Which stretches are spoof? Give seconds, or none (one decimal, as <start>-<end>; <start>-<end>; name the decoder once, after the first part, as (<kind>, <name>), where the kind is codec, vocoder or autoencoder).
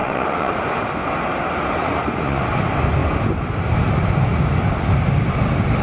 0.0-0.7 (vocoder, Vocos); 1.8-2.5